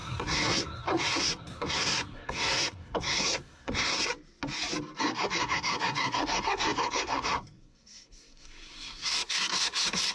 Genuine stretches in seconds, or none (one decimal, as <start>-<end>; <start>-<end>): 4.1-5.0